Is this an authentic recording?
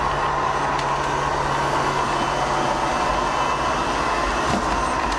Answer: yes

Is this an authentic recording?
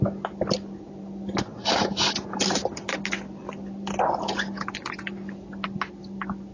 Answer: yes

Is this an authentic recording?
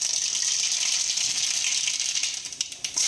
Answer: yes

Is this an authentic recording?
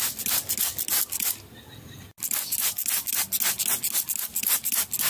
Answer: yes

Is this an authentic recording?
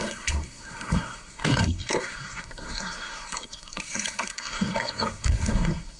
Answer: no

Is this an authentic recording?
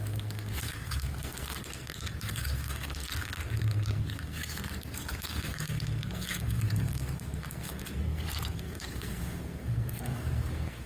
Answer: no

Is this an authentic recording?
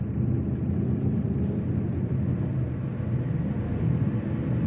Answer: yes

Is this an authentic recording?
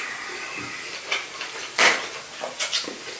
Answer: yes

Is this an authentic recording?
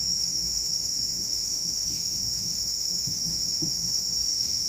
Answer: no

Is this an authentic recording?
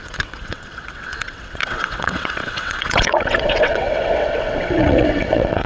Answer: no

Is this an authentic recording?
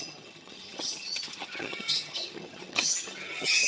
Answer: no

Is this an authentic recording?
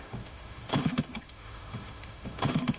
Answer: no